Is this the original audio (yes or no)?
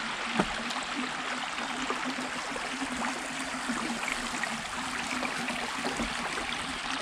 yes